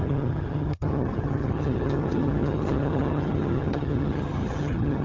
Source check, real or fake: fake